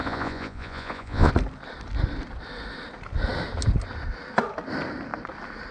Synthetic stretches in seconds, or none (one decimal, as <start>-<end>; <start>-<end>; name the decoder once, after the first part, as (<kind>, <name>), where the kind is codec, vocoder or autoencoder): 0.0-1.3 (vocoder, Vocos)

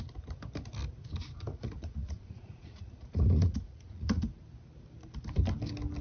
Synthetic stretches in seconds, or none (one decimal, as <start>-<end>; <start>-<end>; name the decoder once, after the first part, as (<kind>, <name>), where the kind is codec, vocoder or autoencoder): 1.5-4.2 (vocoder, Vocos)

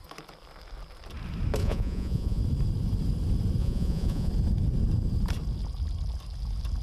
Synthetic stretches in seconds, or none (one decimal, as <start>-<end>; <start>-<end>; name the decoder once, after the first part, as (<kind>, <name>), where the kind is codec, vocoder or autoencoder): 1.6-2.4 (vocoder, Vocos); 3.6-4.3

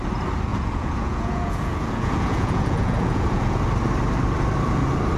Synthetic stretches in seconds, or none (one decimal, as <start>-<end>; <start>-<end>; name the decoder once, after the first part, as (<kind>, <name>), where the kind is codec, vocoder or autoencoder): 0.5-3.6 (vocoder, Vocos)

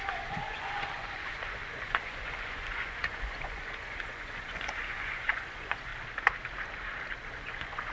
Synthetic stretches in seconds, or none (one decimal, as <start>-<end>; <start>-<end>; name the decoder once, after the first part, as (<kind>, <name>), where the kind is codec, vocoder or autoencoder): 0.0-5.9 (vocoder, Vocos); 7.4-7.9

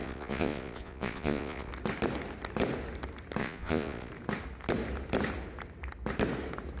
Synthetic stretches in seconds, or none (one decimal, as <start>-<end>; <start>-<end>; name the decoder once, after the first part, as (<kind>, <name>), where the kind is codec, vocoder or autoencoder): 0.0-1.7 (vocoder, Vocos); 3.4-4.1

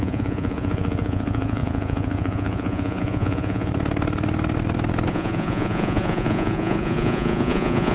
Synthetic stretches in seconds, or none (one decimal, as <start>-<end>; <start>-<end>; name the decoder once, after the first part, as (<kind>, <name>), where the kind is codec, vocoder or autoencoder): 0.0-3.7 (vocoder, Vocos); 5.1-7.9

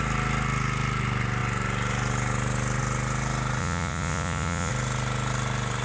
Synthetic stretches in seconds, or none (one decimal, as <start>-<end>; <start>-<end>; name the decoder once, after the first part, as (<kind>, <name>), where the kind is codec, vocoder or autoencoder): 3.6-4.7 (vocoder, Vocos)